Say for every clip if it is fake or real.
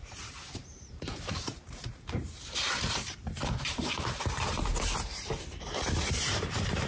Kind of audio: fake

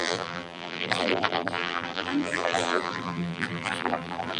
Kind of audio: fake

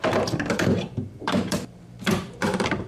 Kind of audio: fake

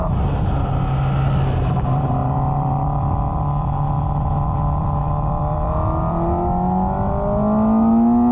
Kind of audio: real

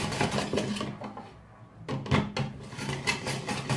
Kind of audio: real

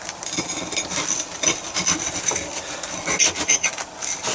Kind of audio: real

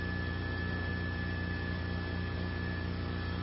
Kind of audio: real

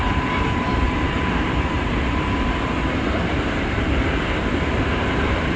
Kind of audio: fake